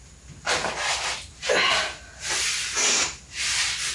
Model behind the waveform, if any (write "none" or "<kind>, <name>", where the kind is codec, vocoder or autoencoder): none